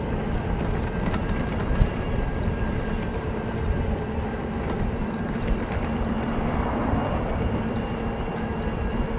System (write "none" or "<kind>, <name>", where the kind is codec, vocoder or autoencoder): none